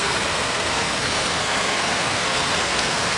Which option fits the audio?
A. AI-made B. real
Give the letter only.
A